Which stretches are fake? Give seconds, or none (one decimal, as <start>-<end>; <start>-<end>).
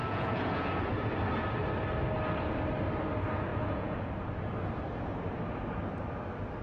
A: 0.0-0.9; 3.5-4.1